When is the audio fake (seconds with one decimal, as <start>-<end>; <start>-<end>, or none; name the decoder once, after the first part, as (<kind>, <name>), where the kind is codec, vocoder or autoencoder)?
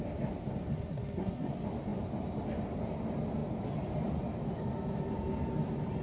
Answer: 0.7-1.5 (codec, SNAC)